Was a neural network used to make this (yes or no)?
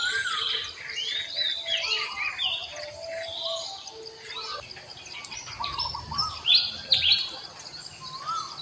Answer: no